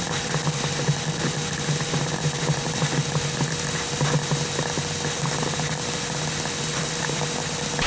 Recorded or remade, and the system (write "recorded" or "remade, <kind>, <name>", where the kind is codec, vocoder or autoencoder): recorded